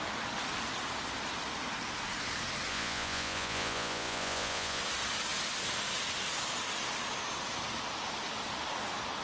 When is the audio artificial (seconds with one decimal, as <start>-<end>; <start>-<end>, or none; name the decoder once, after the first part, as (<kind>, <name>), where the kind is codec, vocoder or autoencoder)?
2.7-4.8 (vocoder, Vocos)